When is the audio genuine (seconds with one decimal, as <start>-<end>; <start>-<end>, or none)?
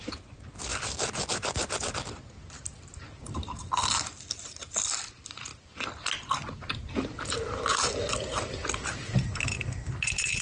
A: 0.0-5.5; 6.9-10.4